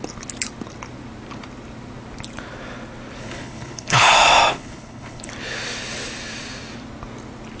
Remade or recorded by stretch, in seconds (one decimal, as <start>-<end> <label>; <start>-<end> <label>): 0.0-3.2 recorded; 3.2-4.1 remade; 4.1-4.5 recorded; 4.5-5.3 remade; 5.3-7.6 recorded